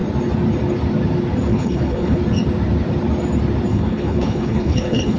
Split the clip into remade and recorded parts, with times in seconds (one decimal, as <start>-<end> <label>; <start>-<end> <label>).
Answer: 0.0-1.5 recorded; 1.5-2.2 remade; 2.2-3.7 recorded; 3.7-5.2 remade